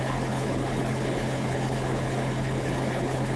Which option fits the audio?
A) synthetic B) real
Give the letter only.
A